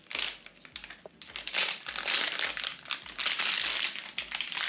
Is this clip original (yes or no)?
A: yes